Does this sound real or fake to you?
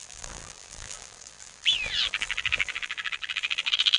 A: fake